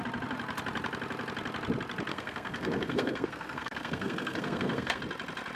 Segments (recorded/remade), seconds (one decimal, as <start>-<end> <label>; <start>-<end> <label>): 0.0-2.1 recorded; 2.1-5.0 remade; 5.0-5.6 recorded